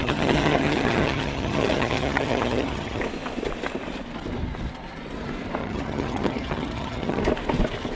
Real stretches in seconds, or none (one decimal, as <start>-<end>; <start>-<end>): 3.0-5.6; 7.2-8.0